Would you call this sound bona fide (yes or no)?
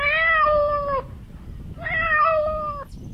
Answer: yes